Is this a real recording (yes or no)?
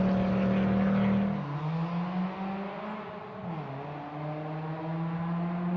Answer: yes